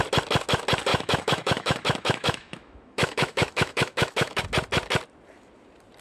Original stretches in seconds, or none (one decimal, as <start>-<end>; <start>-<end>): 0.0-0.9; 4.4-6.0